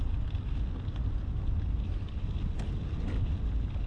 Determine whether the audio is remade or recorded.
recorded